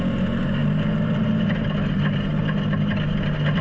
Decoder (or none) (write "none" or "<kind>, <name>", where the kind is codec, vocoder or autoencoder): none